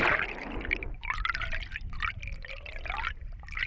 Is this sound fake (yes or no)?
no